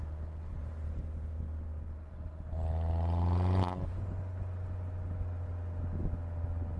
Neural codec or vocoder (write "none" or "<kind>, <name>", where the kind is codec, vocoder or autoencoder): none